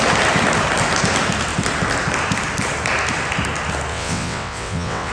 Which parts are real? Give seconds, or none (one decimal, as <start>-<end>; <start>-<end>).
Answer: 0.0-3.9